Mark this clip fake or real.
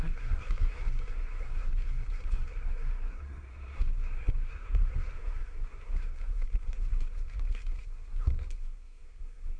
fake